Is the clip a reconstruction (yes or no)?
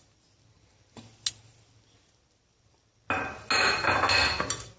no